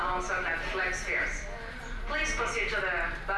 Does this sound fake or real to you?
real